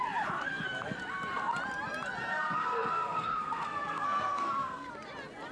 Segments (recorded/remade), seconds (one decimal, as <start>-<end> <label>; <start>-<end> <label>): 0.0-2.3 recorded; 2.3-4.9 remade; 4.9-5.5 recorded